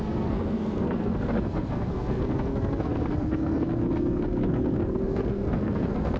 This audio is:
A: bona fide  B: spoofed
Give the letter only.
B